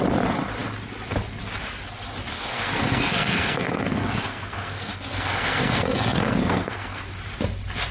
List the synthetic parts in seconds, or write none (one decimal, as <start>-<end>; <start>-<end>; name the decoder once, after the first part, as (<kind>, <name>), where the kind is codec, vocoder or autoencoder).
2.3-7.0 (codec, SNAC)